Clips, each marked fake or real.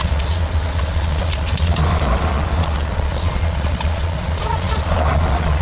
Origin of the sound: fake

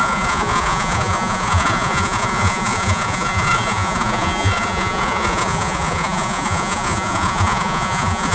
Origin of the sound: fake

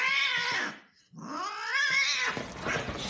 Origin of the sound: real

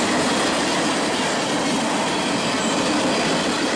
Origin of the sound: real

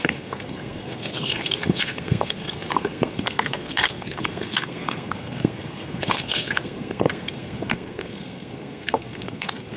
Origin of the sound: fake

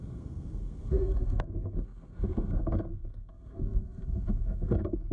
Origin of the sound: fake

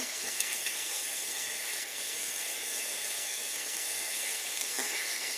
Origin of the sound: fake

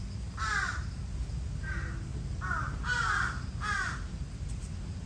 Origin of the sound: real